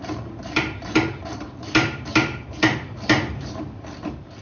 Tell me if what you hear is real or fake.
fake